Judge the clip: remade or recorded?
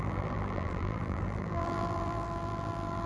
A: remade